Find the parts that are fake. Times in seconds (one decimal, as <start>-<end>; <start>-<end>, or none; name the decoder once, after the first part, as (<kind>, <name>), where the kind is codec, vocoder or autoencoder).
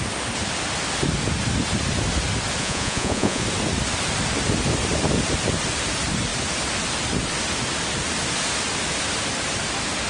2.6-3.4 (vocoder, Vocos)